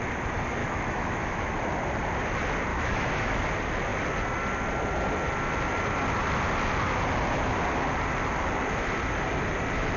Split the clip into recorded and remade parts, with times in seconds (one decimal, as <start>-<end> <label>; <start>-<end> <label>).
0.0-0.6 recorded; 0.6-1.6 remade; 1.6-2.7 recorded; 2.7-3.4 remade; 3.4-10.0 recorded